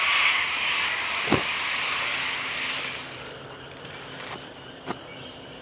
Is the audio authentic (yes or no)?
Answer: no